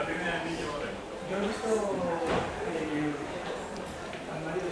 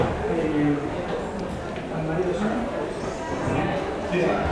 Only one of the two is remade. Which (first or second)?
first